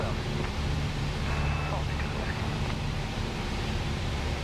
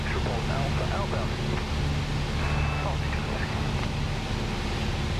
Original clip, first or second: second